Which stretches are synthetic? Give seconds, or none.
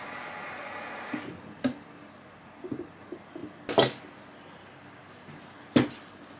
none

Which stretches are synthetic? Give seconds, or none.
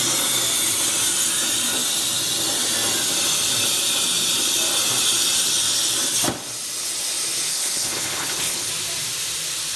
7.5-8.7 (codec, HILCodec)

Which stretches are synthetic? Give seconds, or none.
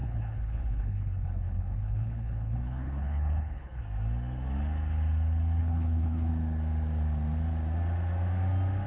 0.0-3.8 (codec, HILCodec); 5.6-6.3